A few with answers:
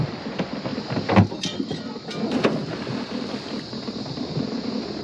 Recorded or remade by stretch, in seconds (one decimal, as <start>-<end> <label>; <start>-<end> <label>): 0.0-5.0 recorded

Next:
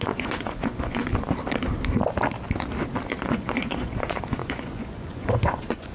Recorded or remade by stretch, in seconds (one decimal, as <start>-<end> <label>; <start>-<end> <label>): 0.0-1.0 remade; 1.0-3.2 recorded; 3.2-5.9 remade

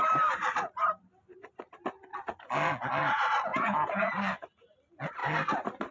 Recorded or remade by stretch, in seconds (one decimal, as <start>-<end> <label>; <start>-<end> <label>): 0.0-3.5 recorded; 3.5-4.1 remade; 4.1-5.9 recorded

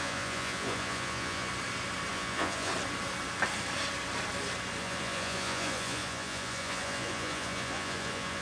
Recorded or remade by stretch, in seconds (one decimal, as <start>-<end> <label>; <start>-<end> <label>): 0.0-1.5 remade; 1.5-2.1 recorded; 2.1-2.7 remade; 2.7-4.8 recorded; 4.8-8.4 remade